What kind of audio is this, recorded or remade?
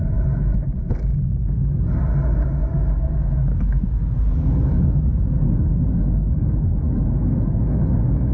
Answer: recorded